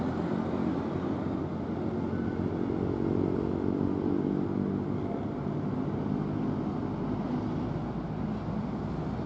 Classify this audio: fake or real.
real